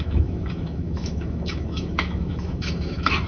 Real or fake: fake